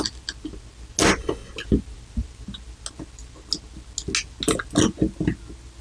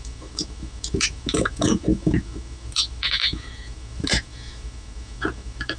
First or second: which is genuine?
first